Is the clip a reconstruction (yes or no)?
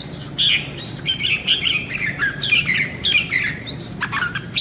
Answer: no